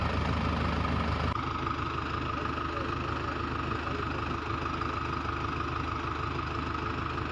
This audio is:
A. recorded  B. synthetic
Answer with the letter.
A